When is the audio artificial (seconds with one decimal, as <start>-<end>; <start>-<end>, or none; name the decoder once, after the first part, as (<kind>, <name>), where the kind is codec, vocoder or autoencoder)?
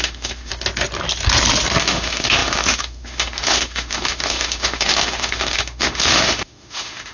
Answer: 0.0-0.5 (autoencoder, DAC-VAE); 1.8-7.1